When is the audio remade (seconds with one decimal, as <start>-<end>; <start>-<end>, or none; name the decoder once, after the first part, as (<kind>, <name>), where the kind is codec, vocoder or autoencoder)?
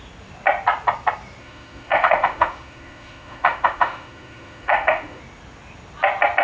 1.4-5.2 (autoencoder, DAC-VAE)